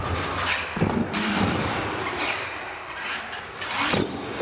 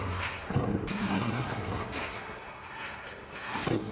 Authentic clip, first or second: first